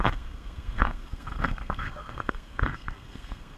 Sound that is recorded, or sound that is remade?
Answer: remade